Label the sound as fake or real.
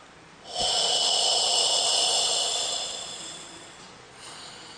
real